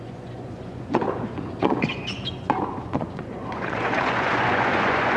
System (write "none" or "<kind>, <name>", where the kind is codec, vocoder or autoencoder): vocoder, Vocos